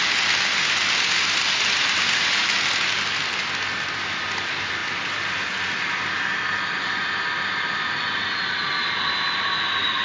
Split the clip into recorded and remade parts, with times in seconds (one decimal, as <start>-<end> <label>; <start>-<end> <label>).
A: 0.0-10.0 recorded